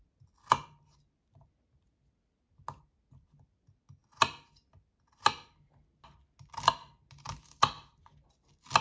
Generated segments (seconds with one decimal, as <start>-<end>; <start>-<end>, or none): none